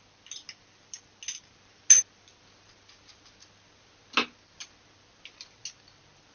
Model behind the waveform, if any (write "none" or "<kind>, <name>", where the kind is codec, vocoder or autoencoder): none